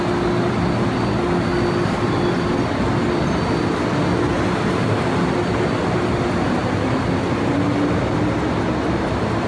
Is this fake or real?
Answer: real